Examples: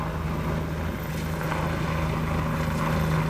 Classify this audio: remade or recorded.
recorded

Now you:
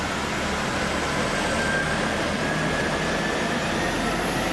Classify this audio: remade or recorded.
recorded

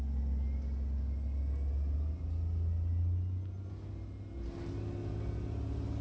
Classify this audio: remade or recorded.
recorded